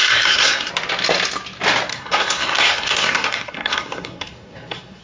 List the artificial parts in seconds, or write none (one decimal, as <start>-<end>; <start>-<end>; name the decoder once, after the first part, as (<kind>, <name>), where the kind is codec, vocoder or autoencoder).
0.0-0.7 (codec, SNAC); 1.9-5.0